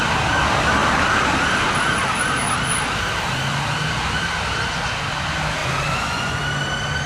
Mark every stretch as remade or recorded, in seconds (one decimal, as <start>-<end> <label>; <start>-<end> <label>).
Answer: 0.0-5.6 recorded; 5.6-6.4 remade; 6.4-7.1 recorded